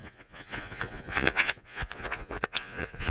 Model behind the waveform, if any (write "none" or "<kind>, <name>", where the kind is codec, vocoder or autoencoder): vocoder, Vocos